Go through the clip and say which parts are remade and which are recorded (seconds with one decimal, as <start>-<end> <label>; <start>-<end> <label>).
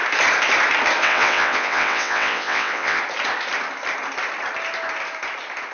0.0-1.0 recorded; 1.0-3.0 remade; 3.0-5.7 recorded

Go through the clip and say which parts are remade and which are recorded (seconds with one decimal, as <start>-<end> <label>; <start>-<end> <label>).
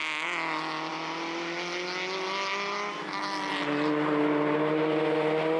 0.0-5.6 recorded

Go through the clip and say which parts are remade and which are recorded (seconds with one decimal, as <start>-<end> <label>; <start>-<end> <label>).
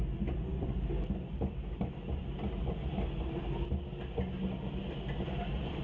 0.0-5.8 recorded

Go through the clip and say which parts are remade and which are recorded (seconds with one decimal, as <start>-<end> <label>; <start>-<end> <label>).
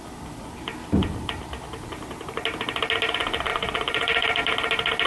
0.0-3.5 recorded; 3.5-4.4 remade; 4.4-5.1 recorded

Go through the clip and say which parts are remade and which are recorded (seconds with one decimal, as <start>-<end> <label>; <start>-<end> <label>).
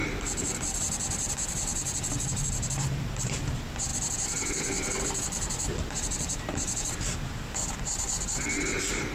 0.0-3.9 remade; 3.9-5.0 recorded; 5.0-9.1 remade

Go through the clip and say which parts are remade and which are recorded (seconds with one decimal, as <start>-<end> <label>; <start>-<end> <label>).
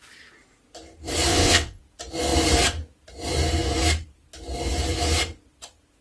0.0-1.3 recorded; 1.3-1.8 remade; 1.8-6.0 recorded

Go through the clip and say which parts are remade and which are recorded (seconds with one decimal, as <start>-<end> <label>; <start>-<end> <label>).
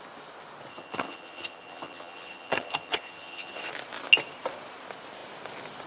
0.0-0.7 recorded; 0.7-3.7 remade; 3.7-5.9 recorded